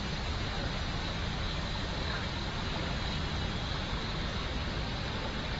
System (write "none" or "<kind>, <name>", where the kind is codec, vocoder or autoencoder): none